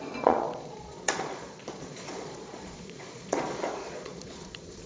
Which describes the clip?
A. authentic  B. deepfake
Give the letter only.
B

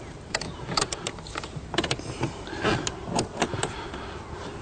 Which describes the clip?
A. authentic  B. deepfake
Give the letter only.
A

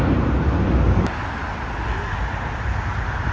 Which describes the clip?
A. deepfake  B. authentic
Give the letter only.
B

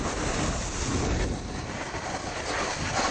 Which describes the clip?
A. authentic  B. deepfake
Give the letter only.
A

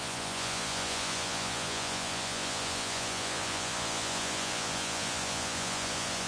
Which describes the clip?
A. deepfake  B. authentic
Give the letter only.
A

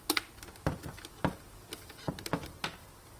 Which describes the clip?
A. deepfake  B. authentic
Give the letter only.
B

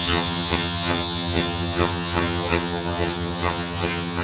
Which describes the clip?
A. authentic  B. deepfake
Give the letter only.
B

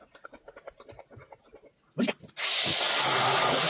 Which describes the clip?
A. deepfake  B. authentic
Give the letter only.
B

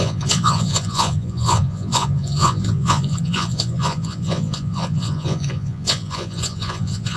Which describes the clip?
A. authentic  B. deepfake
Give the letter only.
B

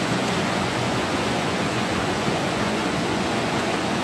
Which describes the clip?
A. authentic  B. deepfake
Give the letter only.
B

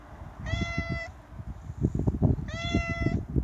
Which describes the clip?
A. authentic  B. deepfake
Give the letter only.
A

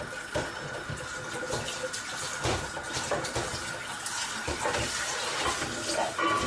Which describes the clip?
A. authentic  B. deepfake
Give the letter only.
A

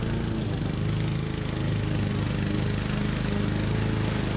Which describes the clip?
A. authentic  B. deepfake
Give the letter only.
A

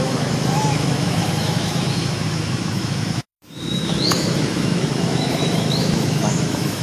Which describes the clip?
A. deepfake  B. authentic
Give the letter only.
A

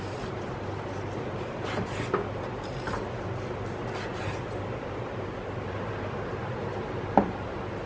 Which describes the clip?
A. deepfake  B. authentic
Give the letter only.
B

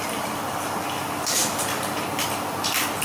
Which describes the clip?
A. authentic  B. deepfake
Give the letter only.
A